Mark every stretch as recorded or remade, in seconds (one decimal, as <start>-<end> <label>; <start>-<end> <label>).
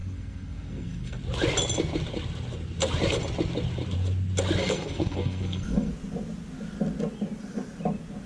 0.0-1.2 remade; 1.2-4.6 recorded; 4.6-5.9 remade; 5.9-8.3 recorded